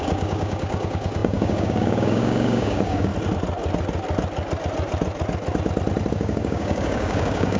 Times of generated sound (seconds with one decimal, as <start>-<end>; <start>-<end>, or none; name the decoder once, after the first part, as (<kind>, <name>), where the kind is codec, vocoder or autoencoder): 0.0-3.1 (codec, DAC); 6.1-7.6